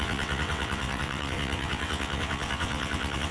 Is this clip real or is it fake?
fake